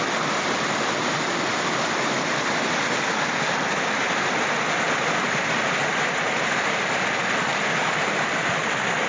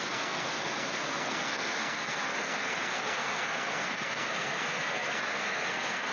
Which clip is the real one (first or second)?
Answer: first